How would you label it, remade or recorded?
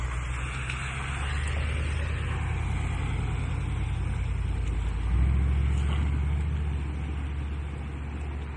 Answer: recorded